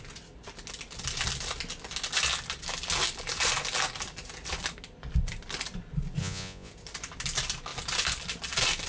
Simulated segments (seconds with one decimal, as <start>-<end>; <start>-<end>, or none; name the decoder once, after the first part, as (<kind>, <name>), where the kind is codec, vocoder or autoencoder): 6.2-6.7 (vocoder, Vocos)